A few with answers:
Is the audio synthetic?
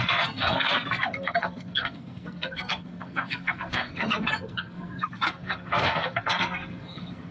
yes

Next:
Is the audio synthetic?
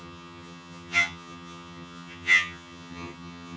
yes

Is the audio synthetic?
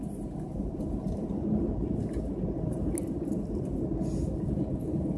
no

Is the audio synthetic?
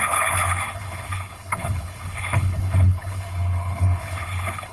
yes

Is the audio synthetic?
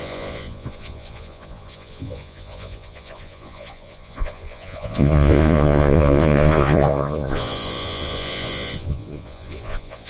yes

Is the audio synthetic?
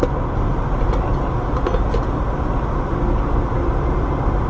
no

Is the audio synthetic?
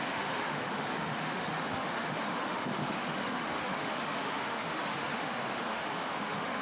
yes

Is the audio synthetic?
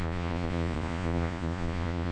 yes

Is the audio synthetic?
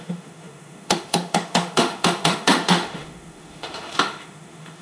yes